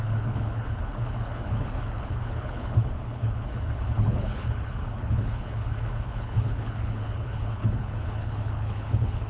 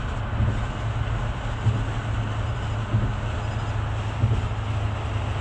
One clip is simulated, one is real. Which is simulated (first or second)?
first